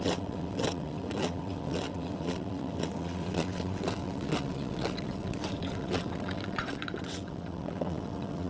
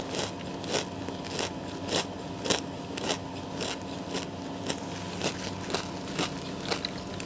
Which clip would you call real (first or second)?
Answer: second